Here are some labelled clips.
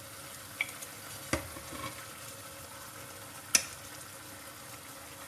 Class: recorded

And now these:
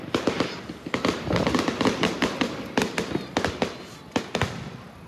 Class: recorded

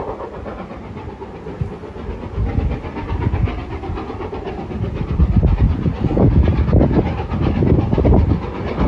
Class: recorded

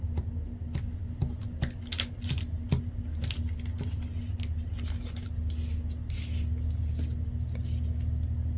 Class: recorded